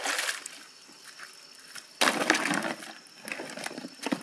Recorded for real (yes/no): yes